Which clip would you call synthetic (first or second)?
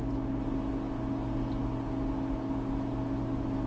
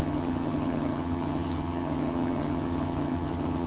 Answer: second